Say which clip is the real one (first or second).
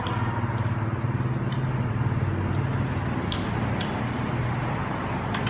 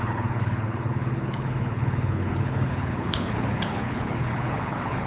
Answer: first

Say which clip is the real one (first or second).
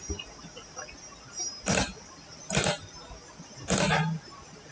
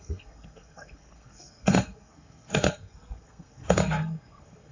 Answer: first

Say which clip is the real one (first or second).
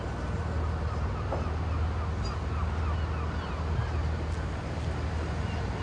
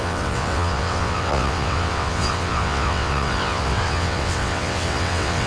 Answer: first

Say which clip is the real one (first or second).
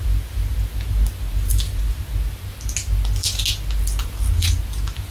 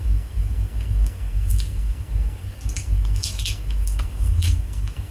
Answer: first